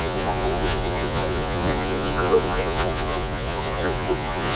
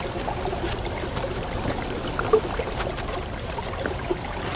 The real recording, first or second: second